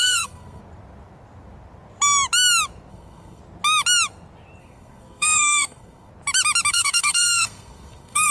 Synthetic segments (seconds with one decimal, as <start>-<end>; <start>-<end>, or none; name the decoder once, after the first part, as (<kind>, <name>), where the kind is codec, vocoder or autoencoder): 0.0-0.6 (codec, SNAC); 2.9-3.4; 4.6-6.1; 6.7-8.3